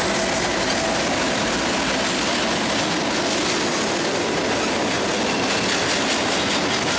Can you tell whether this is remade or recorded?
recorded